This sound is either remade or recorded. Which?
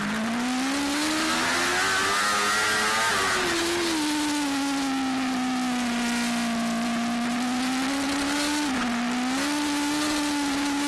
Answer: recorded